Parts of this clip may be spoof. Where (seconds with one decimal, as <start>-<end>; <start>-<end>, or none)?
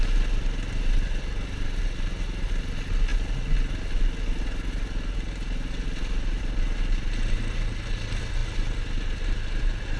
none